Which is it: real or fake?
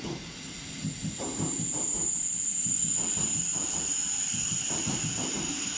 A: real